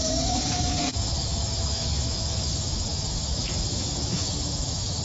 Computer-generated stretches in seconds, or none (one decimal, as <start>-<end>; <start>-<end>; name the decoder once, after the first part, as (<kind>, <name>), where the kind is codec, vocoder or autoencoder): 0.0-5.0 (autoencoder, DAC-VAE)

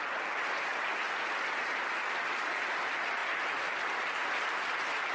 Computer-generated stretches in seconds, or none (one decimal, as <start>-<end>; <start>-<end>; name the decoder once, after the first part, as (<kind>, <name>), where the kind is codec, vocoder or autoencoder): none

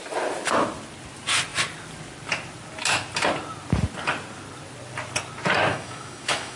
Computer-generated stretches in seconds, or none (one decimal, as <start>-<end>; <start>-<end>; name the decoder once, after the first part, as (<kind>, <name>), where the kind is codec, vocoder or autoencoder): 5.7-6.6 (autoencoder, DAC-VAE)

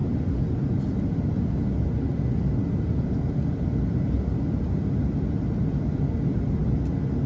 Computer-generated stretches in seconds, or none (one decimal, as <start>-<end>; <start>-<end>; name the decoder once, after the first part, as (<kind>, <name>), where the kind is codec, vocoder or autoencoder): none